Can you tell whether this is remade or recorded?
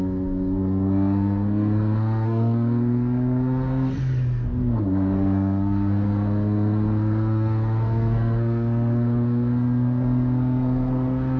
remade